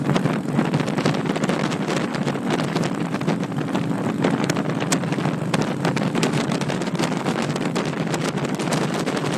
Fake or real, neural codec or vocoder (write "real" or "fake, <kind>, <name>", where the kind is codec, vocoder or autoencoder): real